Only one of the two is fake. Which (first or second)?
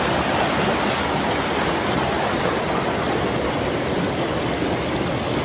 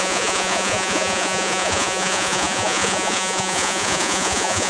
second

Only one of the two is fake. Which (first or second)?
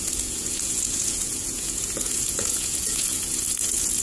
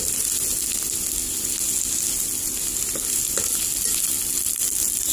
first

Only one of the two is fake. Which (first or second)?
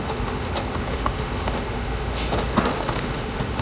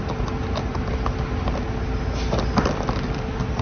first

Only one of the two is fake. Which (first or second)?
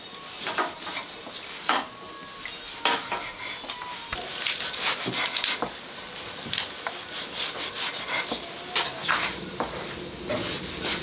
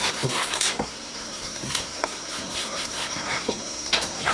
second